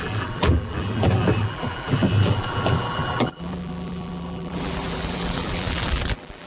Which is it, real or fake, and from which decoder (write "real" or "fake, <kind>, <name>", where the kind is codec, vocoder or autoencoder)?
fake, vocoder, BigVGAN v2